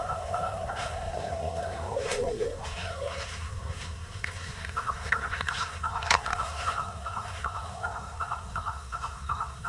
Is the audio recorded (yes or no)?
no